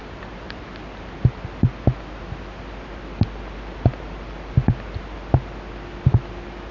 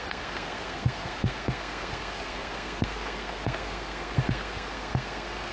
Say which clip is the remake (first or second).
second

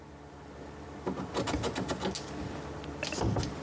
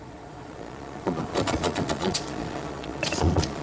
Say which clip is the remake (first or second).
second